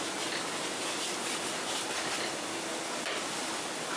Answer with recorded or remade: recorded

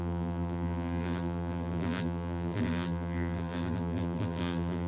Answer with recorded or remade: remade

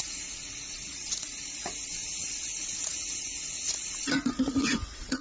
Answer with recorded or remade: remade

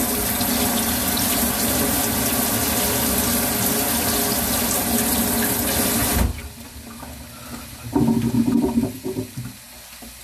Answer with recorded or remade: recorded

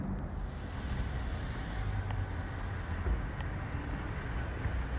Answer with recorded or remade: recorded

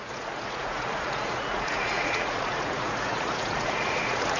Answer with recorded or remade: remade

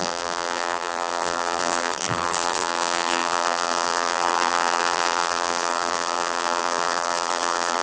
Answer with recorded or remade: remade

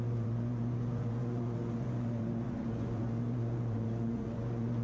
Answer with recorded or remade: remade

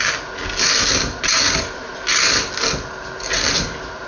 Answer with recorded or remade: recorded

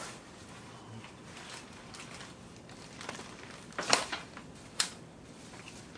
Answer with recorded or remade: remade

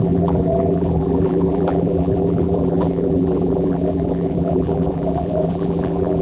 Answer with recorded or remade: remade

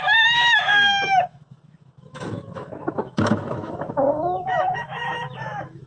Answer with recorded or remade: remade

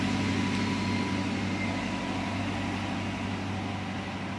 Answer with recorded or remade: recorded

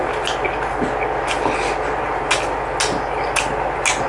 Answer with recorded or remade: recorded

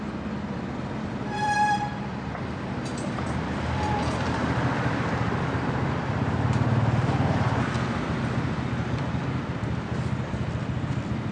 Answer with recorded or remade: remade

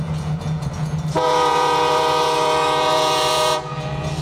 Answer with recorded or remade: remade